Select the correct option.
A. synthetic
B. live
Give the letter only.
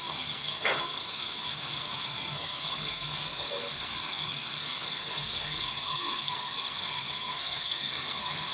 A